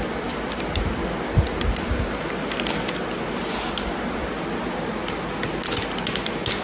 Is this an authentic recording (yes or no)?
yes